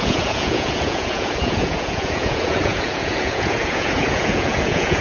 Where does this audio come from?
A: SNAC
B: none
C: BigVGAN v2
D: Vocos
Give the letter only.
D